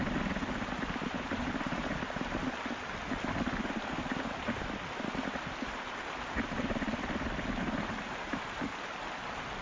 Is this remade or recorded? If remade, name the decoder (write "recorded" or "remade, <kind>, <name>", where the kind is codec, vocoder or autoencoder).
recorded